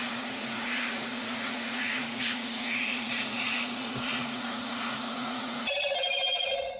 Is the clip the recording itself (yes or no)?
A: no